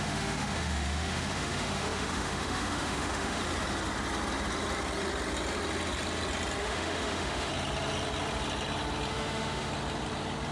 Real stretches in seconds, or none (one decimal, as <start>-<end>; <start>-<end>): 3.4-6.6; 7.5-9.1; 9.7-10.5